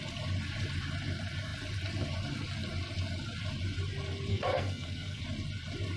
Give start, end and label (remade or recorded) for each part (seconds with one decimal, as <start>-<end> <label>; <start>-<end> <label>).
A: 0.0-4.3 recorded; 4.3-5.2 remade; 5.2-6.0 recorded